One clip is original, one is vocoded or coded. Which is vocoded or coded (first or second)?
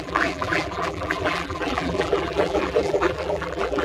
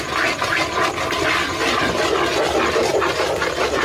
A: first